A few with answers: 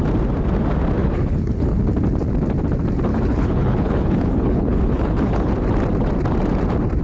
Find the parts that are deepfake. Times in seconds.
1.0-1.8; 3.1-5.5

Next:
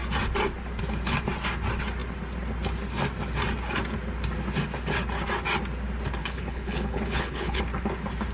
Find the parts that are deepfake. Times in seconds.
6.2-7.6

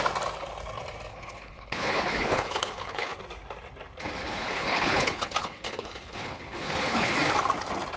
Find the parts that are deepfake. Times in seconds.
1.1-3.2; 4.2-7.1